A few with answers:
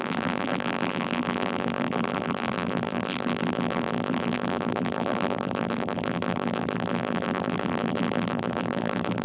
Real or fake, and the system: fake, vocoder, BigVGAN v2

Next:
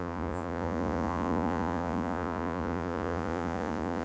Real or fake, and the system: fake, vocoder, Vocos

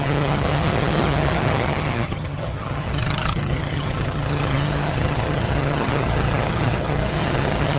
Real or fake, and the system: fake, vocoder, HiFi-GAN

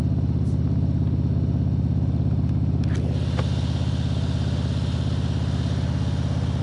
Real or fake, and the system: real